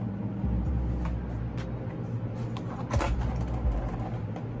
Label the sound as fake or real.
real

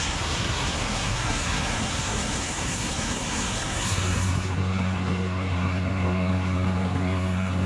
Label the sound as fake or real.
fake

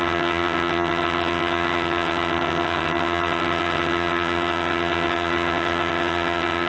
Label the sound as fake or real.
fake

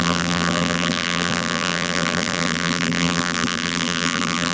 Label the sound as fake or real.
fake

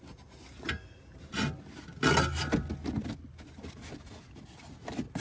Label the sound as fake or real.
real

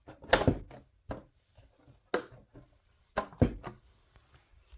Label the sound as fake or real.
real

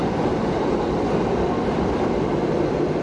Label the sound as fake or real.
real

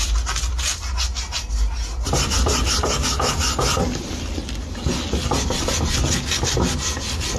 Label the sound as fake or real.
real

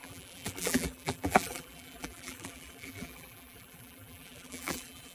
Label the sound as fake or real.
fake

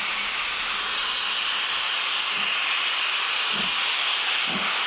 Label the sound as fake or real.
real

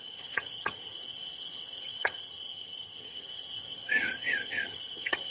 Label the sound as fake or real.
fake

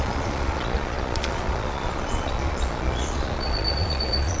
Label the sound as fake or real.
fake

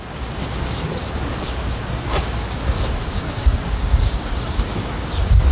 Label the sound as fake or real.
fake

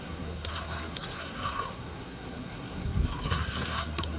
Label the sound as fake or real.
fake